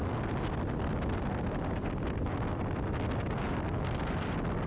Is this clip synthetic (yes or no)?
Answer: no